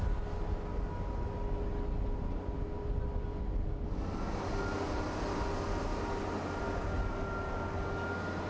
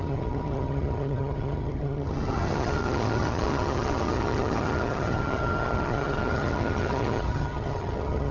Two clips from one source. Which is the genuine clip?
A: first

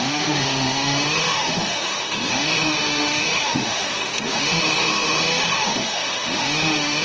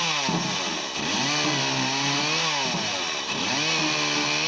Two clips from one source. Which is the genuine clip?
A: second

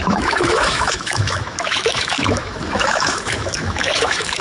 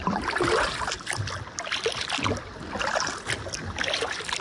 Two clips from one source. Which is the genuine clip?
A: second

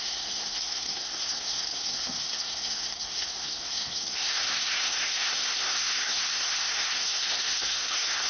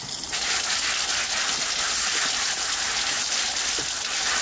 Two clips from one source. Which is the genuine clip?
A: second